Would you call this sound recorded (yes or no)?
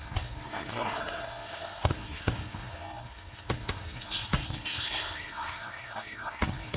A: no